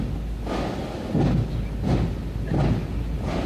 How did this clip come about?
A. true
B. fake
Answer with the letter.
A